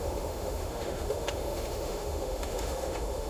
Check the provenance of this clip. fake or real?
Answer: fake